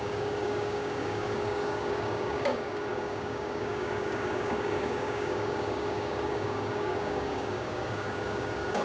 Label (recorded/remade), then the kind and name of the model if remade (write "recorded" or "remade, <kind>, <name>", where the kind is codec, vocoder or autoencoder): remade, codec, DAC